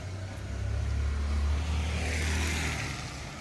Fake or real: real